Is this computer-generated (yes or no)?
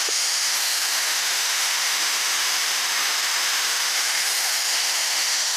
yes